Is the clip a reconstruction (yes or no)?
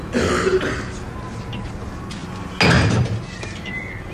no